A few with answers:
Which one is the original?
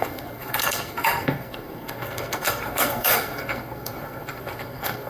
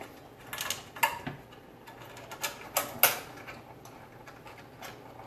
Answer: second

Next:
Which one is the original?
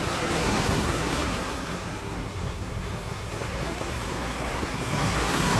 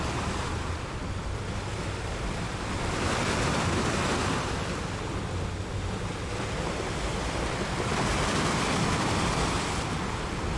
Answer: second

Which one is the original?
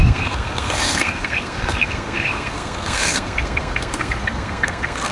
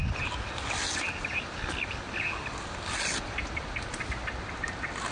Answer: second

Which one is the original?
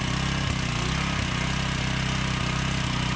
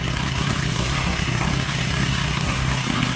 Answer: first